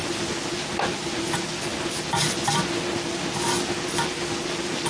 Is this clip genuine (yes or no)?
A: yes